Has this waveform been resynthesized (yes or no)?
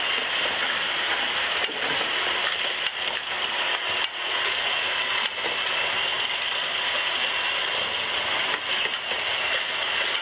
no